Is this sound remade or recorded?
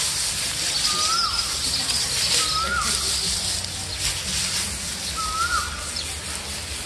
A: recorded